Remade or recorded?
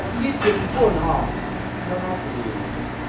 recorded